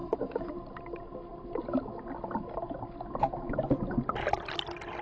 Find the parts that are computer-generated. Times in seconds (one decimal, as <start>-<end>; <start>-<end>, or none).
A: 0.0-0.5